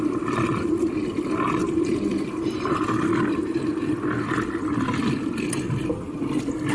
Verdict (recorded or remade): recorded